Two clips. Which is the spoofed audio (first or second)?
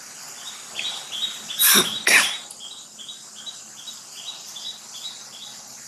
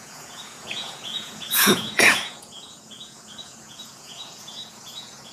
second